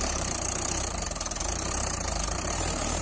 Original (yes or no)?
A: no